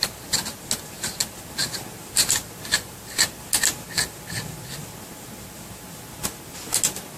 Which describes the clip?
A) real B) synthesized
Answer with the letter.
A